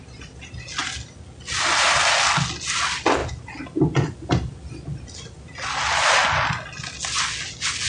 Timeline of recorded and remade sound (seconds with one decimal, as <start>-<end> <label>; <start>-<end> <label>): 0.0-7.9 recorded